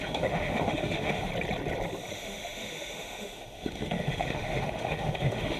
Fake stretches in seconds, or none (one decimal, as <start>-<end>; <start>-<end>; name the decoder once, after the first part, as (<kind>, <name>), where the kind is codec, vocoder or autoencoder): 0.0-1.3 (autoencoder, DAC-VAE); 2.1-5.6